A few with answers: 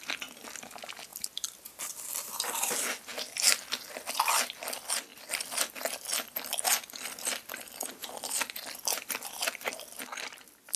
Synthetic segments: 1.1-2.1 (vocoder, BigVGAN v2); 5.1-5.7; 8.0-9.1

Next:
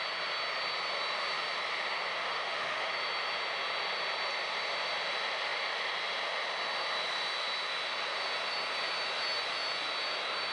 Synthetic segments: 2.2-2.9 (autoencoder, DAC-VAE)

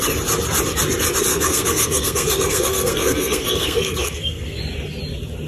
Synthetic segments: 1.3-4.6 (codec, SNAC)

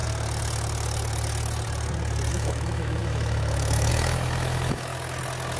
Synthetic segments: 2.3-4.9 (autoencoder, DAC-VAE)